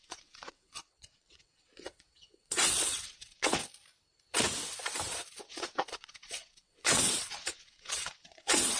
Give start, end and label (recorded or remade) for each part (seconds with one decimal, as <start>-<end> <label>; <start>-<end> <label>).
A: 0.0-3.6 remade; 3.6-5.4 recorded; 5.4-8.8 remade